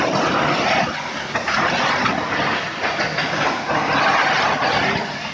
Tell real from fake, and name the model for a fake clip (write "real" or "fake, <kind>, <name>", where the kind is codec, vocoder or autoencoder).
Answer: real